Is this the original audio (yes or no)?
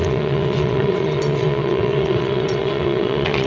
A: no